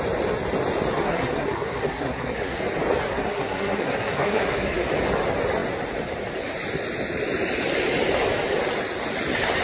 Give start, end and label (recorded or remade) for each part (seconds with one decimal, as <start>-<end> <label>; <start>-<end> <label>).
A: 0.0-1.0 recorded; 1.0-2.6 remade; 2.6-3.1 recorded; 3.1-4.9 remade; 4.9-9.6 recorded